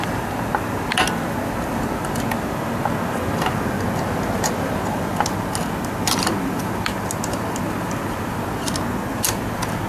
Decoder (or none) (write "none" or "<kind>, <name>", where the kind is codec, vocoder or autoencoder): none